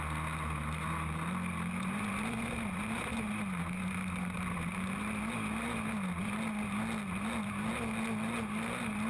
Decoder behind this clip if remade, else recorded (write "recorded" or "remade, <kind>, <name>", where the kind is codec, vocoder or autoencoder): recorded